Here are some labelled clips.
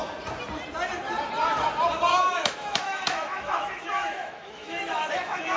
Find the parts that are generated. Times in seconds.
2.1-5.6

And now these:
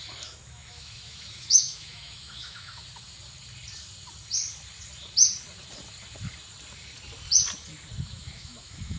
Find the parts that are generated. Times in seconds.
0.0-2.8; 8.0-9.0

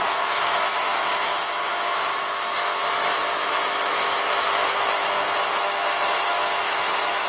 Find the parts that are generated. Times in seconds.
0.0-7.3

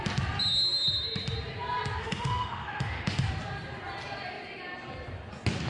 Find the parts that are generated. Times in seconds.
2.0-3.3

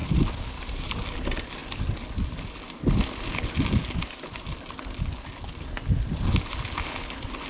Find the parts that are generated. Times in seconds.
none